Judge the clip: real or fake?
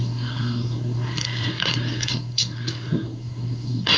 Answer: fake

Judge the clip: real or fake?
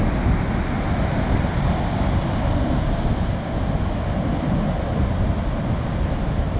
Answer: real